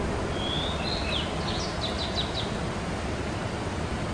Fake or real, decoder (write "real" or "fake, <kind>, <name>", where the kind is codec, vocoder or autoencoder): real